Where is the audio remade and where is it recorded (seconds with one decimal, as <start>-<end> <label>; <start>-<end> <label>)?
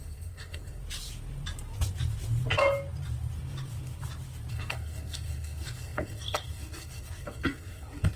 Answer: 0.0-0.8 remade; 0.8-4.5 recorded; 4.5-8.2 remade